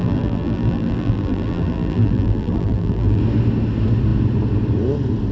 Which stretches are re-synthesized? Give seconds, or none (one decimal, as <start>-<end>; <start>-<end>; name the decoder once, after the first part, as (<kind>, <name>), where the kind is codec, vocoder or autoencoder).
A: 0.0-3.2 (vocoder, BigVGAN v2)